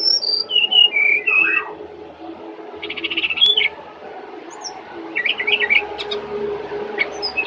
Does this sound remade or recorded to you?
recorded